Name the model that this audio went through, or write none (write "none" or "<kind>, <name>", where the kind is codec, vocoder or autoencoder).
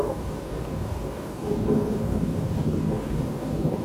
codec, DAC